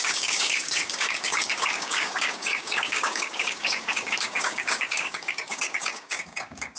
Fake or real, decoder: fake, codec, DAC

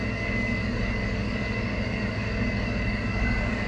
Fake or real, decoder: fake, codec, DAC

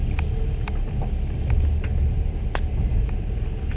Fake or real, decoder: real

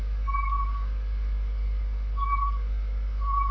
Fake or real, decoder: fake, codec, DAC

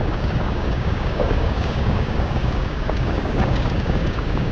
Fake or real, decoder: fake, codec, DAC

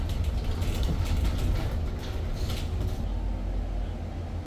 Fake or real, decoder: real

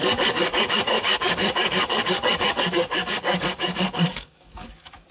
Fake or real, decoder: fake, codec, DAC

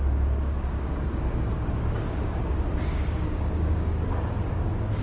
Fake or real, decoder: fake, codec, DAC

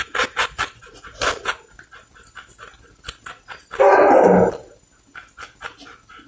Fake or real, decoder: real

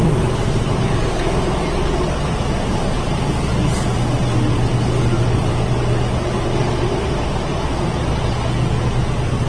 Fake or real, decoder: real